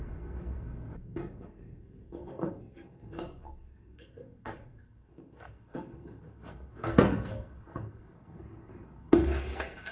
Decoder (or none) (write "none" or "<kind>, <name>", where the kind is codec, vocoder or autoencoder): codec, SNAC